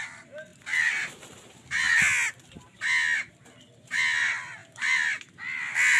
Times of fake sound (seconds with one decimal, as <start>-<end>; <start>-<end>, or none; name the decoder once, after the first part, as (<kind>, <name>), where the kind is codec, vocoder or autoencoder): none